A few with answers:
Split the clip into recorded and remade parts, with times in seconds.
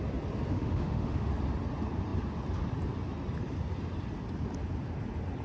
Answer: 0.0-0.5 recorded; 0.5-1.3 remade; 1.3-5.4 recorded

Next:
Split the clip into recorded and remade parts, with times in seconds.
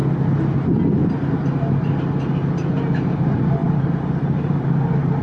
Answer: 0.0-3.1 recorded; 3.1-5.2 remade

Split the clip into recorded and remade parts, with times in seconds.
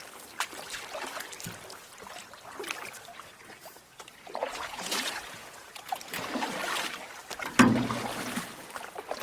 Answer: 0.0-4.4 recorded; 4.4-6.0 remade; 6.0-9.2 recorded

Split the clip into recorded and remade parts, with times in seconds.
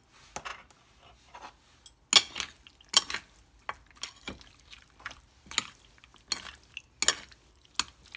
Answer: 0.0-8.2 recorded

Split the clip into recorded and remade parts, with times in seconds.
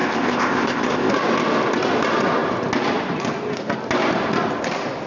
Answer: 0.0-1.1 remade; 1.1-5.1 recorded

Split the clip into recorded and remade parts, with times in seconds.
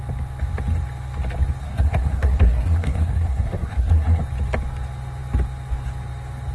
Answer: 0.0-1.6 recorded; 1.6-4.2 remade; 4.2-6.5 recorded